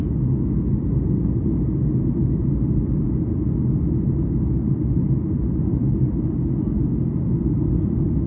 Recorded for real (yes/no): yes